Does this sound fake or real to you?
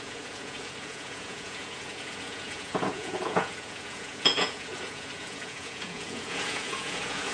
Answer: fake